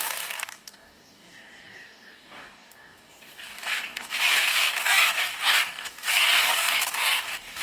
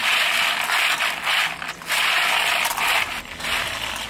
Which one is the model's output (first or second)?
first